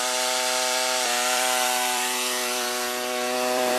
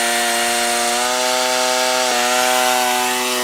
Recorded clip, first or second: second